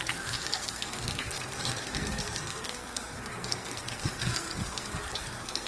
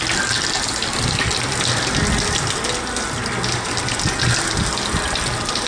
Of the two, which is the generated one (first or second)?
first